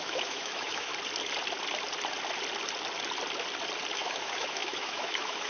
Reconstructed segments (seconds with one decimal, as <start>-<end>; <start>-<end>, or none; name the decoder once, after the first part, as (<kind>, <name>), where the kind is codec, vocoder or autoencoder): 0.0-0.9 (autoencoder, DAC-VAE); 3.9-5.5